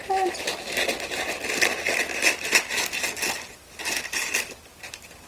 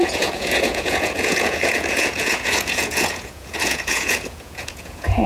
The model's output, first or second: second